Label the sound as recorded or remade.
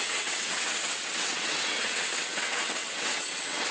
remade